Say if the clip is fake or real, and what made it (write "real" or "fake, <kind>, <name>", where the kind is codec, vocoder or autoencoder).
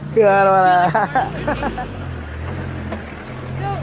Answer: real